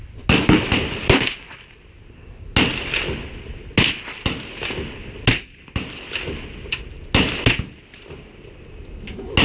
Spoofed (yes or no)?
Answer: no